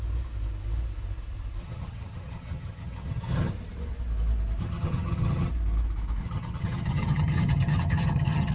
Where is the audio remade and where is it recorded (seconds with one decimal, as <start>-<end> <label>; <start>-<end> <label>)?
0.0-1.6 recorded; 1.6-3.5 remade; 3.5-4.6 recorded; 4.6-5.5 remade; 5.5-6.2 recorded; 6.2-8.5 remade